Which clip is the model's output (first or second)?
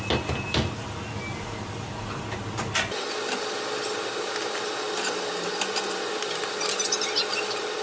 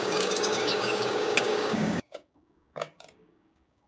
second